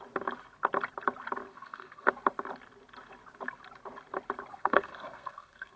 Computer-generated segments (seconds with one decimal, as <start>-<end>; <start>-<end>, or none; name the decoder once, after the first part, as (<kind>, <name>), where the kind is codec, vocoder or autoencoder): 1.5-2.1 (codec, SNAC); 4.5-5.8